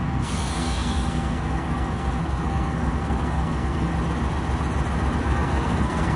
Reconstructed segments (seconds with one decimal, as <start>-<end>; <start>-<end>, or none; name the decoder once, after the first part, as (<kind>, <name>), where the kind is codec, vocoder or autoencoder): 0.0-3.9 (codec, SNAC); 5.2-6.2